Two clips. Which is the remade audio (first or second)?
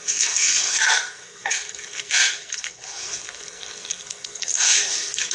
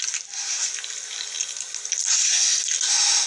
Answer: first